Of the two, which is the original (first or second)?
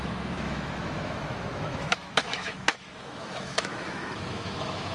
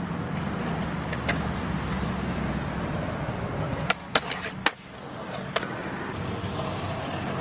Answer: second